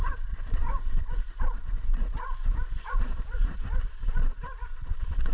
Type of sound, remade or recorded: remade